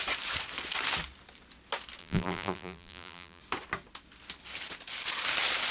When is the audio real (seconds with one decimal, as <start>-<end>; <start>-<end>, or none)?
0.0-2.0; 3.4-5.7